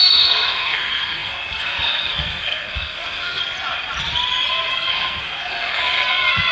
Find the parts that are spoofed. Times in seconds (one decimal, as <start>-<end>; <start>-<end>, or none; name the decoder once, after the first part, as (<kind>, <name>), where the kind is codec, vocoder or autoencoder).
0.0-3.4 (codec, SNAC); 4.7-6.5